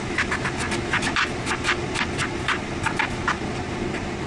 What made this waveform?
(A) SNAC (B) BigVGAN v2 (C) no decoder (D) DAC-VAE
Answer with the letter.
C